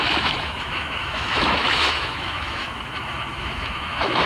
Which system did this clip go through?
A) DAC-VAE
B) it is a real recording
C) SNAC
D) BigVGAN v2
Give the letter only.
A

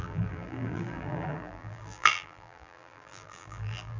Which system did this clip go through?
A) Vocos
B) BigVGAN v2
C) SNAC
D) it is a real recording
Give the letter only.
B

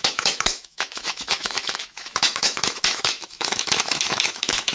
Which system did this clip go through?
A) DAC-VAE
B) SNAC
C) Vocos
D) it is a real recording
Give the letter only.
A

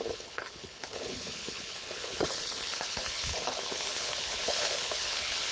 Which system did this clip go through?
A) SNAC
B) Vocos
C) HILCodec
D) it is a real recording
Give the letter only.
C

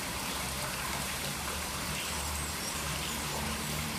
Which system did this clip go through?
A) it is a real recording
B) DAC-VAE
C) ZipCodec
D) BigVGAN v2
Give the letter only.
D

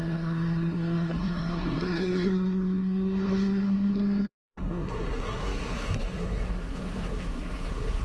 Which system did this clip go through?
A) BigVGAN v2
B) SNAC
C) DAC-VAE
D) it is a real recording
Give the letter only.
B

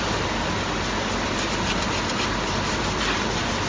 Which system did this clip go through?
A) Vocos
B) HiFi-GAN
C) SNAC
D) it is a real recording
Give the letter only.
D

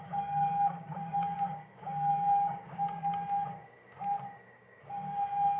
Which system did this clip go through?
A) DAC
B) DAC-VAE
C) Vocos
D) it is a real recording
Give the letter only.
A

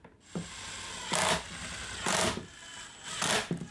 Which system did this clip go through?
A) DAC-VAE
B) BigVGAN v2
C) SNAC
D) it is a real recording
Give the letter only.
D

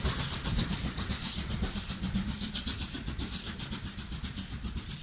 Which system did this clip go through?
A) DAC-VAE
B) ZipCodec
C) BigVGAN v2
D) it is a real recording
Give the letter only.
D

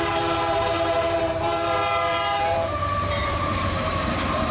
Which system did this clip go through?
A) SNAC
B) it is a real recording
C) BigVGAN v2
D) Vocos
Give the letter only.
C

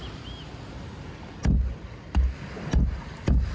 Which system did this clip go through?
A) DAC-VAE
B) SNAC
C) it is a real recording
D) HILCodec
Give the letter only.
C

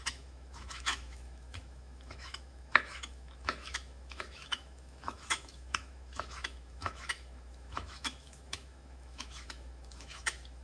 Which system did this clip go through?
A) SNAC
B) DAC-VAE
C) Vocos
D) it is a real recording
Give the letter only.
B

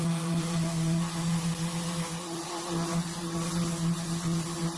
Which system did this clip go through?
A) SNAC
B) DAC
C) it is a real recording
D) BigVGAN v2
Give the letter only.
C